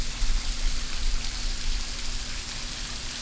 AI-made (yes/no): no